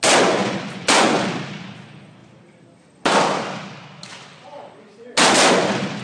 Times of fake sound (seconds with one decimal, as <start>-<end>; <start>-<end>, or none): 0.4-1.2